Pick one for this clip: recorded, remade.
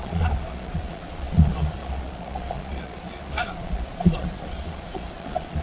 remade